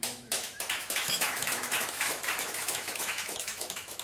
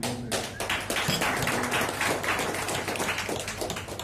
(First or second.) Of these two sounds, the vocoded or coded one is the first